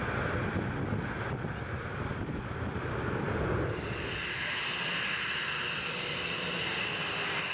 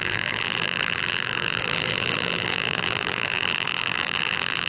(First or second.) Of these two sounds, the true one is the first